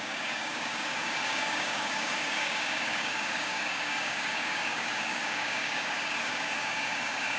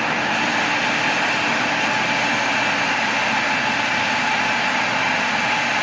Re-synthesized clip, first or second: first